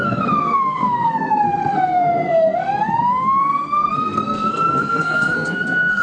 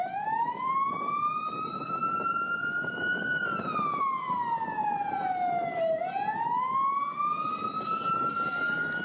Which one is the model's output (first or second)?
first